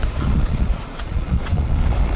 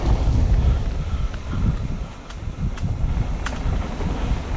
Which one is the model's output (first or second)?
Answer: first